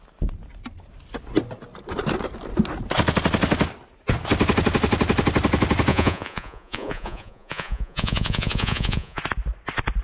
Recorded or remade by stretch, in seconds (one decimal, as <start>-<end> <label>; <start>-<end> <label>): 0.0-5.9 recorded; 5.9-9.2 remade; 9.2-10.0 recorded